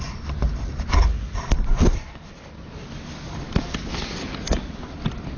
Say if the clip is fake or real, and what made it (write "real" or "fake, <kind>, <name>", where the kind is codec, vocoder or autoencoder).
real